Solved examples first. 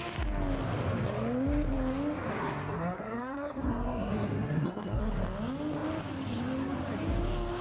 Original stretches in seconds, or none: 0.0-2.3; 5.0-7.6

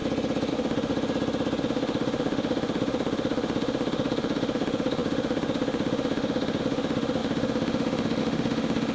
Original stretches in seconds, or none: 0.0-0.5; 0.9-1.6